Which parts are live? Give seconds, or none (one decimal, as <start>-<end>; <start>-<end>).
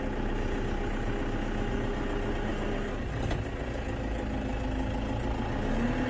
0.0-6.1